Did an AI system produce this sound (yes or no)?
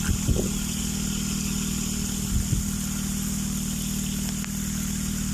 no